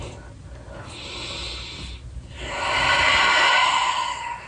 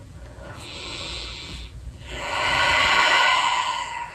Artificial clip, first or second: second